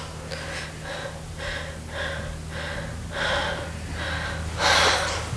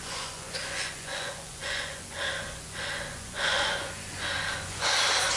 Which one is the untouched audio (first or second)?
first